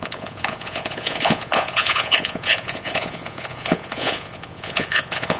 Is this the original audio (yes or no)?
no